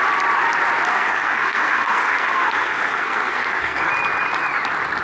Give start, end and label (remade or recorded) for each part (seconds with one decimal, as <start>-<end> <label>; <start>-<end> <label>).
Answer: 0.0-0.9 recorded; 0.9-3.9 remade; 3.9-5.0 recorded